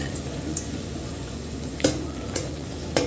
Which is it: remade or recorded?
remade